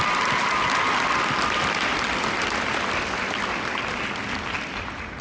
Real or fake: real